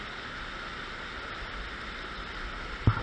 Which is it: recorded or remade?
recorded